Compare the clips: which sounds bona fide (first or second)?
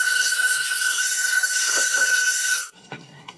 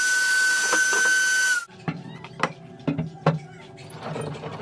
second